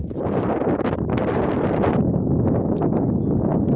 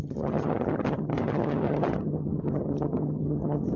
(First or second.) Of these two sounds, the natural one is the first